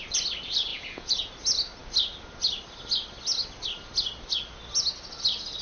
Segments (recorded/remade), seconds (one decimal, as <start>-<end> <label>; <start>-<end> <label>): 0.0-0.7 recorded; 0.7-1.3 remade; 1.3-5.6 recorded